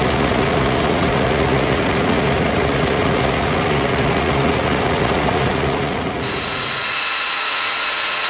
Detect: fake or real fake